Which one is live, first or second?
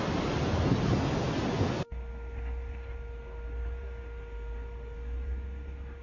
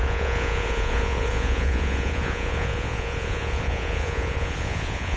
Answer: first